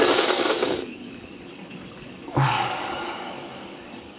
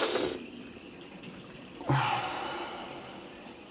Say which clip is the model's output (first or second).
first